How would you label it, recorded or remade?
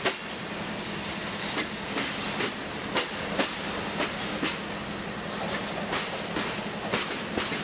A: recorded